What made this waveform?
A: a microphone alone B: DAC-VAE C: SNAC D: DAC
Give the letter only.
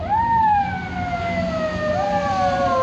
A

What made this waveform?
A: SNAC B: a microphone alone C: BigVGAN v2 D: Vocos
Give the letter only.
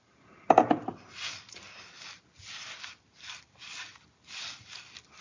B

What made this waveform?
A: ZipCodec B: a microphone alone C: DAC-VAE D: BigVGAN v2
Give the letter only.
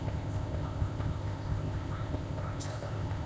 A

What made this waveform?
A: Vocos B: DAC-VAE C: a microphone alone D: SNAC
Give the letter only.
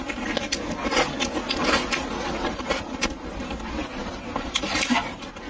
C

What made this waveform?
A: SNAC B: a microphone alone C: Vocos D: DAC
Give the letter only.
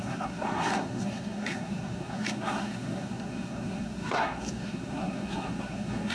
A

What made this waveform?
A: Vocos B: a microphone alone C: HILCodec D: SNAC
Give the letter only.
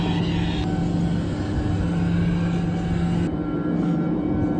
B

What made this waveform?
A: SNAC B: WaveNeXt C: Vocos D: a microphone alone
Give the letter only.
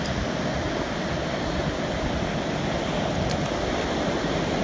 D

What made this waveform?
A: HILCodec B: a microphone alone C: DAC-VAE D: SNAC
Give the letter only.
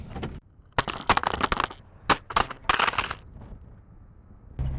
B